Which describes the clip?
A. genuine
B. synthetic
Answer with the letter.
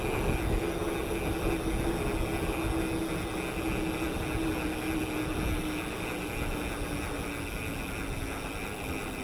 A